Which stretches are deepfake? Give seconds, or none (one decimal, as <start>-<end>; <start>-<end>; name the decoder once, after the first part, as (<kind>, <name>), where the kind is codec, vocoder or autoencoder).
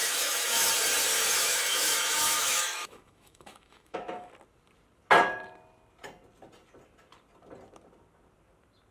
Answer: 0.0-0.7 (autoencoder, DAC-VAE); 1.1-4.3